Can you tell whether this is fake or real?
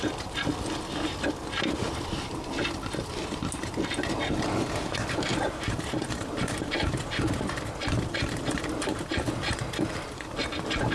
fake